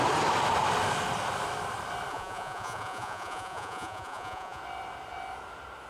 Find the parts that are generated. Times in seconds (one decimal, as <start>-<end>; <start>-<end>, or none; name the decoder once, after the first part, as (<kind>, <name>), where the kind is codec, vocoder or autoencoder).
2.1-4.6 (vocoder, Vocos)